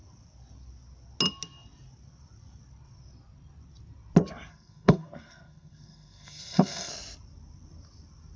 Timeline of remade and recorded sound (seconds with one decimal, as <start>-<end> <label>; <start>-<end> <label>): 0.0-4.5 recorded; 4.5-6.9 remade; 6.9-8.4 recorded